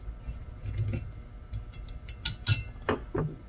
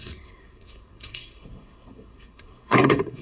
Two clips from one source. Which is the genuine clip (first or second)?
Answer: first